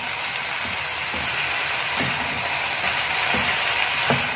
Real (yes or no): yes